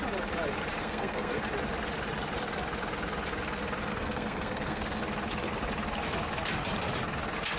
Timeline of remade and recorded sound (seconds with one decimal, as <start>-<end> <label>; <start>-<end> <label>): 0.0-0.8 recorded; 0.8-1.4 remade; 1.4-3.9 recorded; 3.9-5.0 remade; 5.0-7.6 recorded